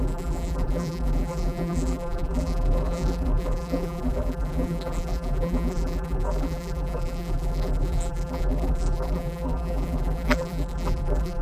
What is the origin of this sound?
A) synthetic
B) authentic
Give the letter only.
A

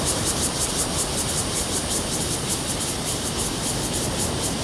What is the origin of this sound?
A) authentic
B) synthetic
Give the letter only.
B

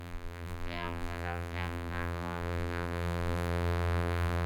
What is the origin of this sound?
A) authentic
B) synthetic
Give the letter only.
B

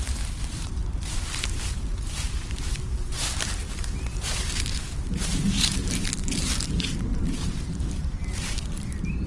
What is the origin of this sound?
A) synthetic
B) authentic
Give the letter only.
A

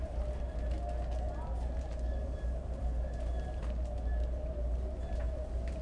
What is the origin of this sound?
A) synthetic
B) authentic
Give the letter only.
B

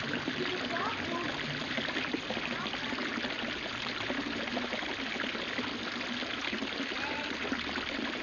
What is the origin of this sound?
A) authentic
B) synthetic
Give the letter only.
A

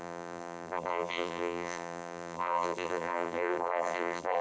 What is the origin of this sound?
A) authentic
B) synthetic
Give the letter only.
B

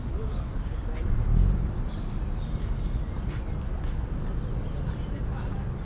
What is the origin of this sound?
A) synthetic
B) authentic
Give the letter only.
B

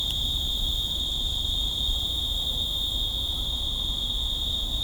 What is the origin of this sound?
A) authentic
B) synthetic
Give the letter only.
B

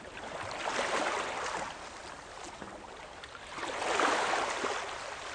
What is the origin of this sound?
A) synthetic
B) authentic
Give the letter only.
B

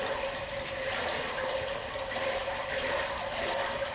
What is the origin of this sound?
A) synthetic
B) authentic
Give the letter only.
A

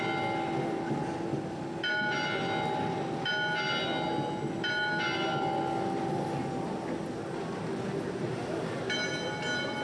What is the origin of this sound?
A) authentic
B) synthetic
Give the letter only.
A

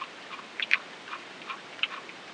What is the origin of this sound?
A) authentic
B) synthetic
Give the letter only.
B